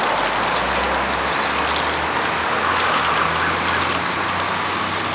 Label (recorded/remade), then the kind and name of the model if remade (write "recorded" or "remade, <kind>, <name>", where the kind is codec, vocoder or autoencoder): recorded